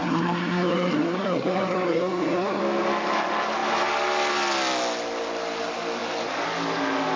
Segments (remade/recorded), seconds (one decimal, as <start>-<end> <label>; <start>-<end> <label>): 0.0-2.6 remade; 2.6-7.2 recorded